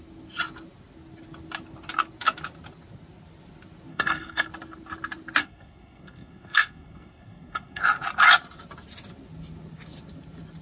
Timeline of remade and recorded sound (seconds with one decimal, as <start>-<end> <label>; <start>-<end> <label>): 0.0-3.9 recorded; 3.9-4.5 remade; 4.5-5.4 recorded; 5.4-7.8 remade; 7.8-10.6 recorded